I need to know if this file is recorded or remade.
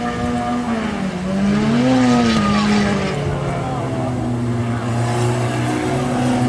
recorded